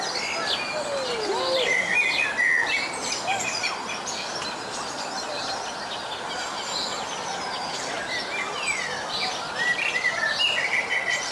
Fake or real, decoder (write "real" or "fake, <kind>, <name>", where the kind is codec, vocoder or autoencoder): real